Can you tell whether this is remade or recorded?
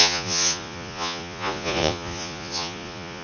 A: remade